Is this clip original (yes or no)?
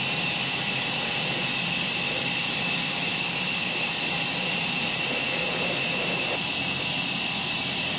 yes